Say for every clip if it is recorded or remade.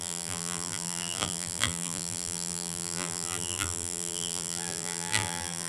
remade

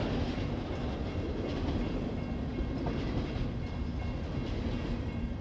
recorded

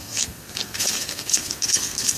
remade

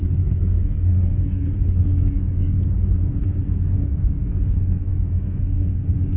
remade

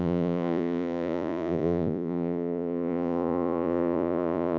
remade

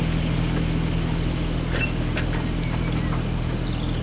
recorded